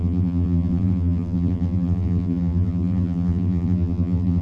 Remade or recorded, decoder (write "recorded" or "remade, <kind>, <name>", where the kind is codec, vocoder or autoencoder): remade, vocoder, BigVGAN v2